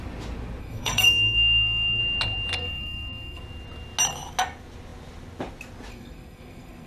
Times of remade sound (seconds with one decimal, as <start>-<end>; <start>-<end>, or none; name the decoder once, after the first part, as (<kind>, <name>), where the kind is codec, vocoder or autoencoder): 0.6-2.0 (codec, SNAC); 2.6-3.4; 5.9-6.9